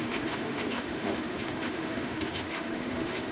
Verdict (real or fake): fake